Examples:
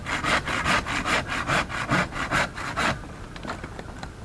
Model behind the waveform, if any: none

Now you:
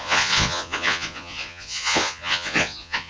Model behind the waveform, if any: vocoder, Vocos